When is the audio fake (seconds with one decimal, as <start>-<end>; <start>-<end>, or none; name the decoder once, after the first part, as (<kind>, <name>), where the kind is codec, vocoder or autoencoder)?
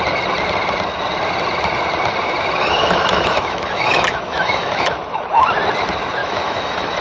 2.6-5.5 (autoencoder, DAC-VAE); 6.2-7.0